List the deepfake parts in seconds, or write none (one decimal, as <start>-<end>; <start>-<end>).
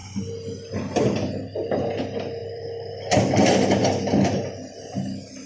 2.4-2.9